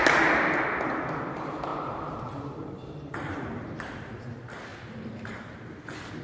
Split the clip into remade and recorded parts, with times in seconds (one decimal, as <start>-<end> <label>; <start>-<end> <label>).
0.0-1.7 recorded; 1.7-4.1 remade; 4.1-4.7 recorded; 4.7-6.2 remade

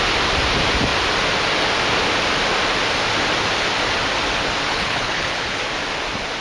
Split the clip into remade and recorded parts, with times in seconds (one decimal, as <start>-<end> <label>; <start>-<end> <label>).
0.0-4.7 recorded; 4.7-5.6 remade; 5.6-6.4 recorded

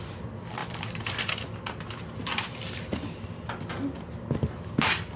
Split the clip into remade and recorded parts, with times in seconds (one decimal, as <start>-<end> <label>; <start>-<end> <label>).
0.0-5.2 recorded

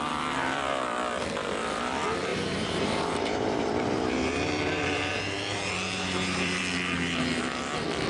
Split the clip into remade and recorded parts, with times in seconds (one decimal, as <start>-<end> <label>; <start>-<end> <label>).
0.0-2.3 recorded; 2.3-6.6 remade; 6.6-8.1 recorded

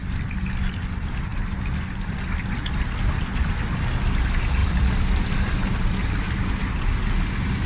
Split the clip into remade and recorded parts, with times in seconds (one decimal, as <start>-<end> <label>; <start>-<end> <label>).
0.0-1.3 recorded; 1.3-2.3 remade; 2.3-4.6 recorded; 4.6-6.3 remade; 6.3-7.7 recorded